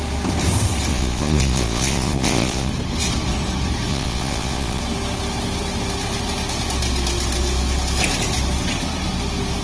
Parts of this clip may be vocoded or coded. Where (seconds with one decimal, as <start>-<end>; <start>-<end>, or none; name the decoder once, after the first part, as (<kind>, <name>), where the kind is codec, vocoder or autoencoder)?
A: 0.9-2.7 (vocoder, Vocos); 3.9-4.8